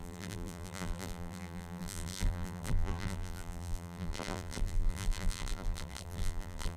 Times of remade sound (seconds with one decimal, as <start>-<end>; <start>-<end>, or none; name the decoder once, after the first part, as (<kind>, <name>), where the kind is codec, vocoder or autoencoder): 0.0-6.8 (vocoder, BigVGAN v2)